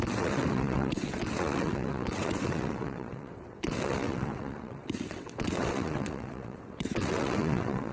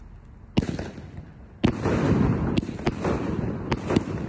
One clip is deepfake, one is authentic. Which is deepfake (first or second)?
first